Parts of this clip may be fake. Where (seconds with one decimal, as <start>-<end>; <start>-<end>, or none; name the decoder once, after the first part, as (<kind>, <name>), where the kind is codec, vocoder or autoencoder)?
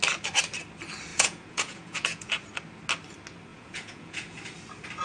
1.1-2.3 (vocoder, Vocos); 3.5-4.4